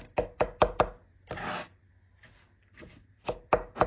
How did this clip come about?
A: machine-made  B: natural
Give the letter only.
B